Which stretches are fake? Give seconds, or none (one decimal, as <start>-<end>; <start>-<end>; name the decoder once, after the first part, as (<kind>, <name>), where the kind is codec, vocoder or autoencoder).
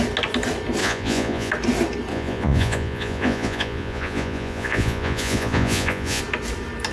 0.8-1.5 (vocoder, Vocos); 2.1-6.2